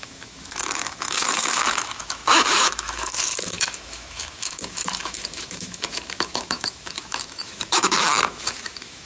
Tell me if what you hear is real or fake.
fake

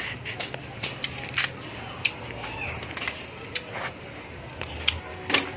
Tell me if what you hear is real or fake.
real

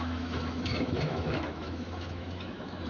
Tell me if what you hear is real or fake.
fake